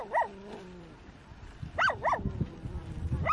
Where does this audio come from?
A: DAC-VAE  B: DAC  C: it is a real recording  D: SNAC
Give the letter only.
C